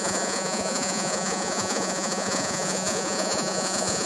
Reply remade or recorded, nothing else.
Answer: remade